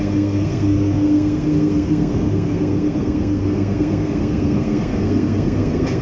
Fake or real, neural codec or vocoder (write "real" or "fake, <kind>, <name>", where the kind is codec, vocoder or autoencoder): fake, codec, SNAC